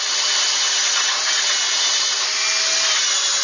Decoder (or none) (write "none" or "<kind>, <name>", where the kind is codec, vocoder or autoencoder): none